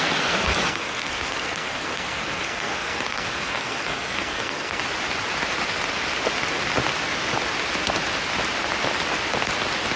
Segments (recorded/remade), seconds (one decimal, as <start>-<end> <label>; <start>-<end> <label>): 0.0-4.8 remade; 4.8-10.0 recorded